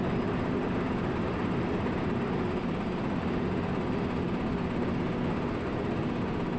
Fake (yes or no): no